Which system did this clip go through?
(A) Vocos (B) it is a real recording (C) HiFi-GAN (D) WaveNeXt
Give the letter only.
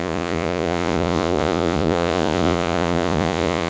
A